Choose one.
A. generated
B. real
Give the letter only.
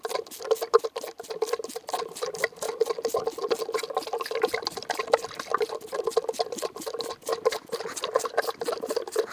B